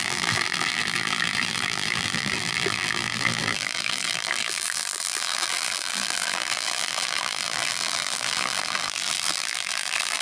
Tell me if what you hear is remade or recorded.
remade